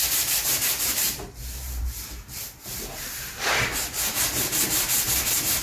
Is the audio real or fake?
fake